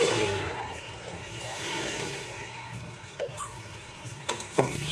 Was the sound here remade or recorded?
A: remade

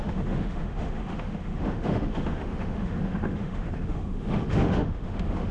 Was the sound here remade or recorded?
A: remade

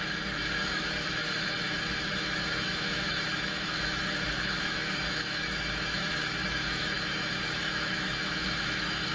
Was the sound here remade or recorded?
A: remade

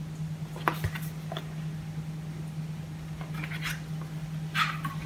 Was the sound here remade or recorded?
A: recorded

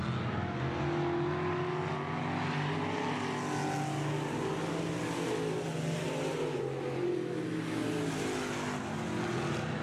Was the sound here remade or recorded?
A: recorded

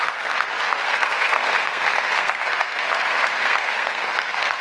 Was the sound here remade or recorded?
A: remade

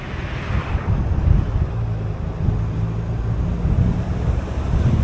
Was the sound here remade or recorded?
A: recorded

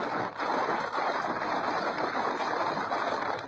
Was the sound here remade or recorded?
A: recorded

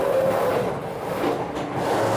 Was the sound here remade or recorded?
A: recorded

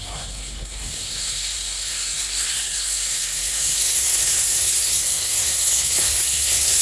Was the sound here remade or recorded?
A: remade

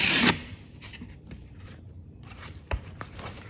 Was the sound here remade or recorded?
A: remade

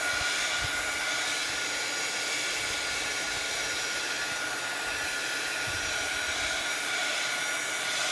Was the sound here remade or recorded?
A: recorded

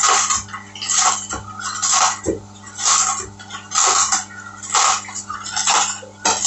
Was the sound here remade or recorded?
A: recorded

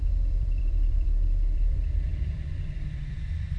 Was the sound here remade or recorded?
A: remade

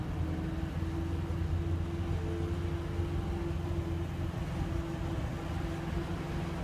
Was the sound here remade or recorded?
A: recorded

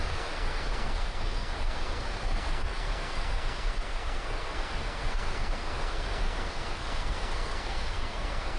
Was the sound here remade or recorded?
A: remade